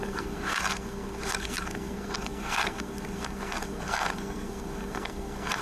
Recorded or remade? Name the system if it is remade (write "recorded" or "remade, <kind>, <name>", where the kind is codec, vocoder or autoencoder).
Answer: remade, codec, SNAC